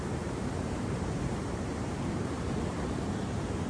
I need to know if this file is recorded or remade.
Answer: remade